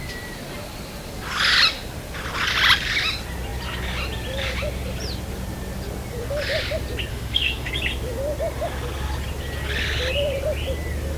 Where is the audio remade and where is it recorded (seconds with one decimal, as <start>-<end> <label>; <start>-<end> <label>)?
0.0-7.1 recorded; 7.1-7.7 remade; 7.7-11.2 recorded